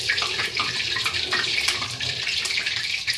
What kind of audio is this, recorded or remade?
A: remade